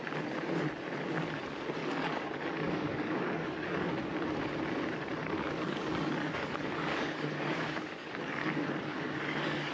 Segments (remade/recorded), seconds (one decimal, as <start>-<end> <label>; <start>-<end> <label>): 0.0-1.8 recorded; 1.8-3.9 remade; 3.9-5.2 recorded; 5.2-9.7 remade